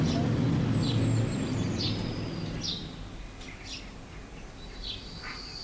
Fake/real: real